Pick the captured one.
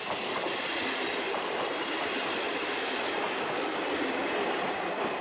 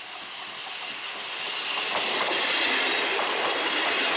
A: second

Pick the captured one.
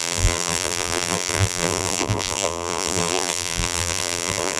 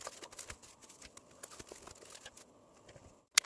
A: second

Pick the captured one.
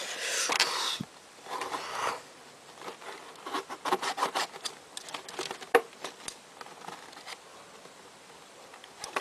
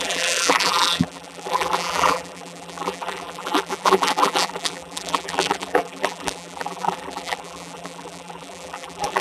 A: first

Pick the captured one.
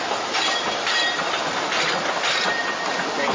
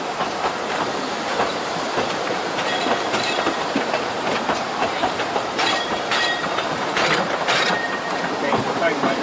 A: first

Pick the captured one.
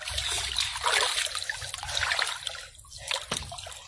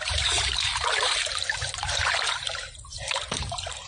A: first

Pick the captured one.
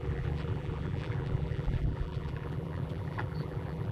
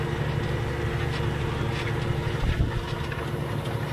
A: second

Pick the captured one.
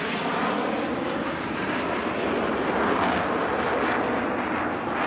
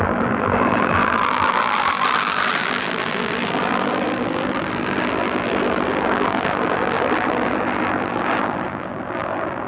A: first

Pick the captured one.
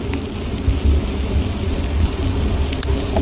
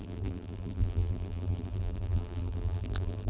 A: first